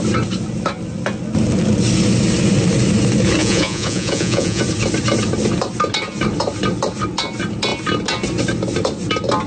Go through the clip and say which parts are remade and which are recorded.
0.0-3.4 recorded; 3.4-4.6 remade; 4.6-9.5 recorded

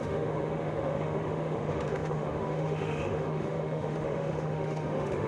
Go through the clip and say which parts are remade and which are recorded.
0.0-5.3 remade

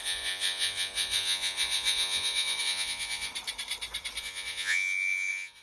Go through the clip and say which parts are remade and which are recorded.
0.0-3.3 remade; 3.3-4.2 recorded; 4.2-5.6 remade

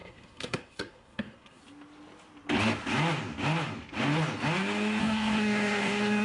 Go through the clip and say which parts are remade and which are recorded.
0.0-1.6 remade; 1.6-5.0 recorded; 5.0-6.2 remade

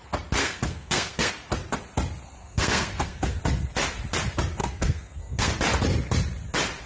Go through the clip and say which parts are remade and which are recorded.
0.0-0.4 recorded; 0.4-1.3 remade; 1.3-2.4 recorded; 2.4-3.4 remade; 3.4-4.6 recorded; 4.6-5.5 remade; 5.5-6.9 recorded

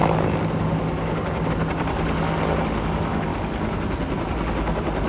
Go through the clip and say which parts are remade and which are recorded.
0.0-5.1 recorded

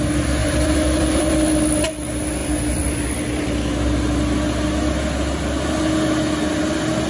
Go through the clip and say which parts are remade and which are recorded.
0.0-0.4 recorded; 0.4-1.3 remade; 1.3-2.4 recorded; 2.4-3.4 remade; 3.4-7.1 recorded